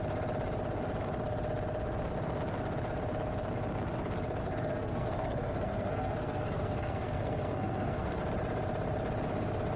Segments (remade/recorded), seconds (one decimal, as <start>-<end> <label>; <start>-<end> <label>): 0.0-4.4 recorded; 4.4-8.2 remade; 8.2-9.8 recorded